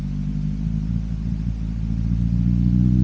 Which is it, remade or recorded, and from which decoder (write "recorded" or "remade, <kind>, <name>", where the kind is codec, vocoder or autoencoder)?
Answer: recorded